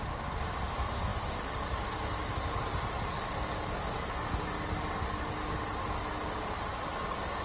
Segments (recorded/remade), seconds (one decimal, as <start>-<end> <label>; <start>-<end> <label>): 0.0-7.4 recorded